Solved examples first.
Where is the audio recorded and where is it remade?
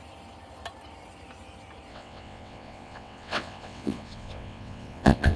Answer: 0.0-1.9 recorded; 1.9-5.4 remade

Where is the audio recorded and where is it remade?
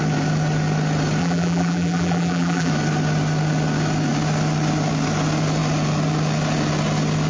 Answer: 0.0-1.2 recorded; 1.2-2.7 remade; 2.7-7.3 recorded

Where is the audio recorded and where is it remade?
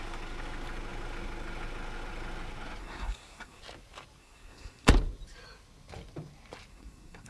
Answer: 0.0-2.8 recorded; 2.8-3.6 remade; 3.6-4.2 recorded; 4.2-4.9 remade; 4.9-6.7 recorded; 6.7-7.3 remade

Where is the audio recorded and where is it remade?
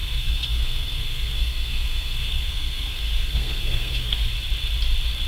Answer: 0.0-4.3 remade; 4.3-5.3 recorded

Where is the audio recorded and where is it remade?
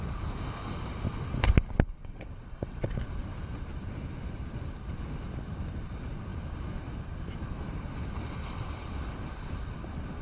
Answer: 0.0-2.0 recorded; 2.0-3.0 remade; 3.0-10.2 recorded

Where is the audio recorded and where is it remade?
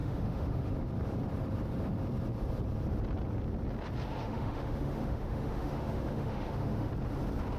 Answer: 0.0-0.7 remade; 0.7-4.2 recorded; 4.2-6.9 remade; 6.9-7.6 recorded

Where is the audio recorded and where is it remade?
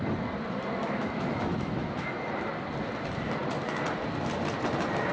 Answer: 0.0-0.8 recorded; 0.8-2.3 remade; 2.3-5.1 recorded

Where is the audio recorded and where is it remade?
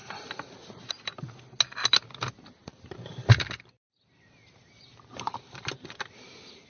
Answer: 0.0-0.9 remade; 0.9-2.6 recorded; 2.6-6.7 remade